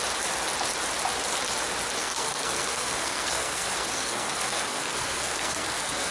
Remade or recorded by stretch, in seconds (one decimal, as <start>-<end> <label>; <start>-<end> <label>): 0.0-2.0 recorded; 2.0-6.1 remade